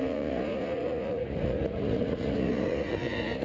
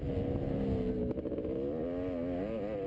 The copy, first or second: first